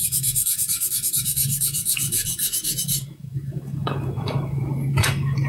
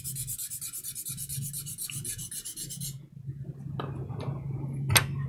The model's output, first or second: first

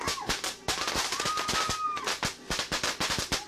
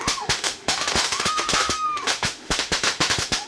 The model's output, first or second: second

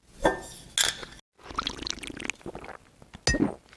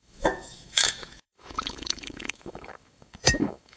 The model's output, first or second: second